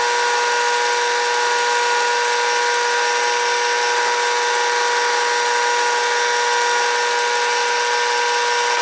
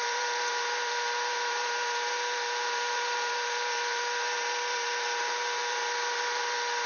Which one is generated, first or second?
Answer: second